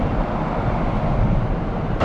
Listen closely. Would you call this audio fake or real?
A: real